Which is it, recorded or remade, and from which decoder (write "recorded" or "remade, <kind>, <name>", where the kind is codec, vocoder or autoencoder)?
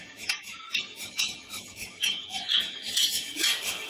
remade, codec, DAC